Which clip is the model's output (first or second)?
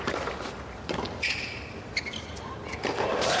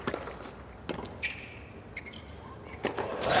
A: first